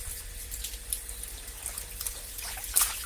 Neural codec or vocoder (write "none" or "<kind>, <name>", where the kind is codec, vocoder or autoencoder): none